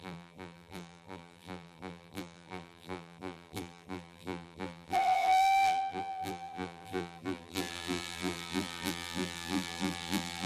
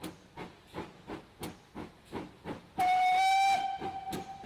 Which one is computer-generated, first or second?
first